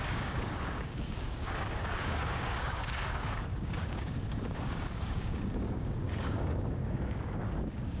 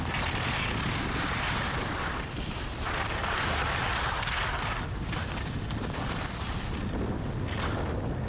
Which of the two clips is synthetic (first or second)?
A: first